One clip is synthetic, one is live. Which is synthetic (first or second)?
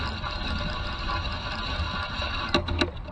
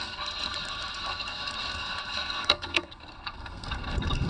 second